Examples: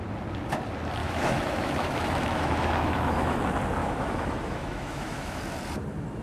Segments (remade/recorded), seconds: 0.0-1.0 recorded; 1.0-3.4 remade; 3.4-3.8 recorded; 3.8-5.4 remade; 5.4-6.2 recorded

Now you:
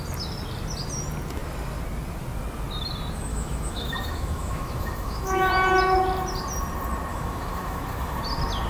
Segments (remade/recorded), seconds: 0.0-3.3 recorded; 3.3-5.5 remade; 5.5-7.1 recorded; 7.1-8.2 remade; 8.2-8.7 recorded

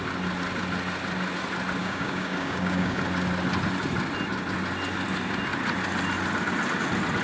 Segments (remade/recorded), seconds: 0.0-1.8 recorded; 1.8-3.0 remade; 3.0-7.2 recorded